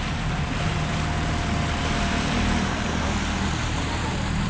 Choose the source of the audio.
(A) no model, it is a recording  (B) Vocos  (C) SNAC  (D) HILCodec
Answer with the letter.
A